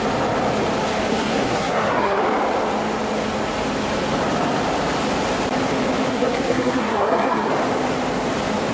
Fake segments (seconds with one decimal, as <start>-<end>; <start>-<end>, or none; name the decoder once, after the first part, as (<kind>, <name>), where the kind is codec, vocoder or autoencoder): 1.1-2.2 (codec, SNAC); 6.1-7.5